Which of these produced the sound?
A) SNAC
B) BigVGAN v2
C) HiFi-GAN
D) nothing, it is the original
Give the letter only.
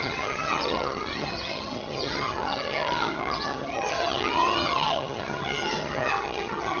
C